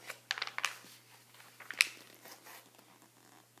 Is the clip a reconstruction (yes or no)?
no